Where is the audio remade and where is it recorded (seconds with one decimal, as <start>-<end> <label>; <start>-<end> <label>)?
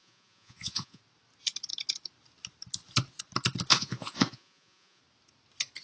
0.0-1.0 remade; 1.0-3.7 recorded; 3.7-5.0 remade; 5.0-5.8 recorded